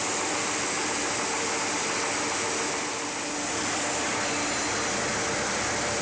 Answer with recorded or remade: recorded